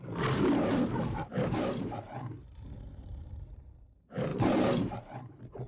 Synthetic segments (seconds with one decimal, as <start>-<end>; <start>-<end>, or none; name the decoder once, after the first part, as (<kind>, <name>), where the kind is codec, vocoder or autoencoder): 0.0-5.7 (vocoder, BigVGAN v2)

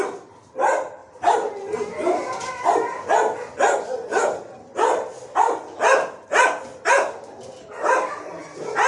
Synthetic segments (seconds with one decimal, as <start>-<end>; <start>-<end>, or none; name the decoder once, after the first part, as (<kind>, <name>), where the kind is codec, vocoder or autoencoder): 1.0-1.5 (vocoder, BigVGAN v2)

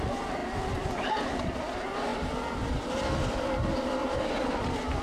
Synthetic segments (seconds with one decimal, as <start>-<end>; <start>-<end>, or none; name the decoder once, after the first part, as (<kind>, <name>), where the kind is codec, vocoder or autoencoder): 4.0-4.5 (vocoder, BigVGAN v2)

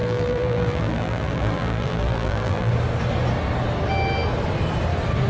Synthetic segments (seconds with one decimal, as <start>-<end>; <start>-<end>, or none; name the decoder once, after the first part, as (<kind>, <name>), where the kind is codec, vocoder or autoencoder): 0.0-2.7 (vocoder, BigVGAN v2)

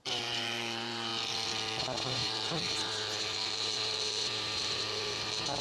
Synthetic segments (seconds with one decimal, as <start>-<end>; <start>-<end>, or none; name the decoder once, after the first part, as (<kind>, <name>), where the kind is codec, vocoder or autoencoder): 0.0-1.1 (vocoder, BigVGAN v2); 1.8-5.6